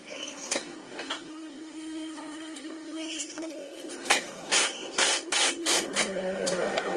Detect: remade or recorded remade